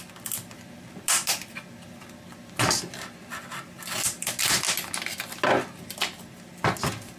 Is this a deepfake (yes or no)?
no